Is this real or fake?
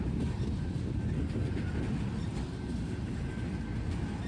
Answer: real